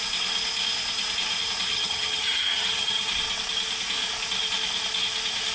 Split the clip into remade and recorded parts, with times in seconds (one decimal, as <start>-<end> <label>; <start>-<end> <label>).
0.0-1.7 recorded; 1.7-3.1 remade; 3.1-5.5 recorded

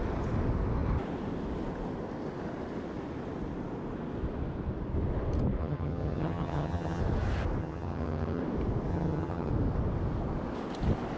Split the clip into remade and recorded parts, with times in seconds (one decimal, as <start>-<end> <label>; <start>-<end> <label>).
0.0-5.6 recorded; 5.6-7.0 remade; 7.0-7.6 recorded; 7.6-8.4 remade; 8.4-8.9 recorded; 8.9-9.5 remade; 9.5-11.2 recorded